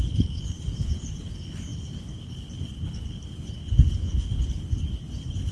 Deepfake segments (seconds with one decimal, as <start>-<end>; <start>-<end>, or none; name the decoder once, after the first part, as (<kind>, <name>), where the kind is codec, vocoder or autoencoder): 0.0-5.5 (codec, HILCodec)